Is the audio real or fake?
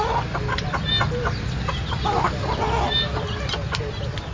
real